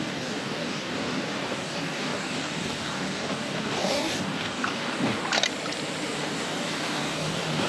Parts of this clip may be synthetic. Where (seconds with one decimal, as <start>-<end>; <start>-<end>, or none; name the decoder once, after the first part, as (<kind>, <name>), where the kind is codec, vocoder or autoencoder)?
0.0-5.2 (codec, DAC); 6.2-7.7